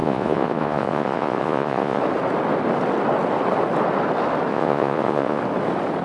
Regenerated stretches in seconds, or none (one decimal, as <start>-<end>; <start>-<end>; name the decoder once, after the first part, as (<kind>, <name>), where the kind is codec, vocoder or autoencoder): 0.0-2.0 (vocoder, Vocos); 4.5-5.4